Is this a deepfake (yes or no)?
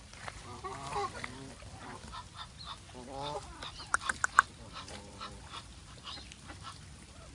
yes